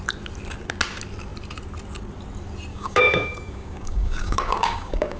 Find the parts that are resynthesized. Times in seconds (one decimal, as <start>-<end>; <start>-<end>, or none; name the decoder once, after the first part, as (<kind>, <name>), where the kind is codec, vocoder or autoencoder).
2.7-5.2 (codec, DAC)